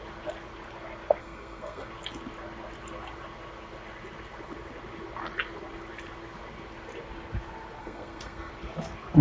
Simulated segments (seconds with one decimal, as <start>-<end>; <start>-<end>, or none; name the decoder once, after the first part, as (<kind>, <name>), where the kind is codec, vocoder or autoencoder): 1.2-1.9 (codec, SNAC); 7.8-8.5